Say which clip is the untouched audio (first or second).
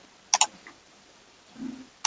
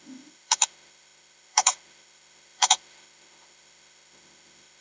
first